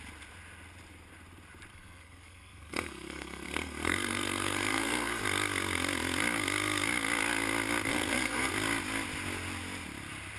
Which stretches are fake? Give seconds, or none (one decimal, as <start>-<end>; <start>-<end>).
1.7-5.2; 7.9-8.5